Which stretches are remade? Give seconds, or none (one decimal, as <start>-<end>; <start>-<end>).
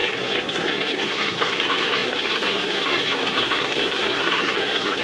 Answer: 0.0-5.0